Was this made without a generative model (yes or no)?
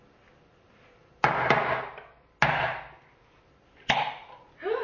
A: yes